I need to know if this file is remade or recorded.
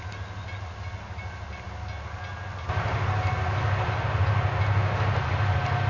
recorded